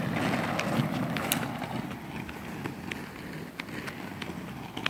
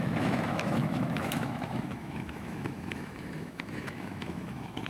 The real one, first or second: first